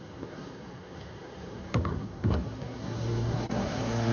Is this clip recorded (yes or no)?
no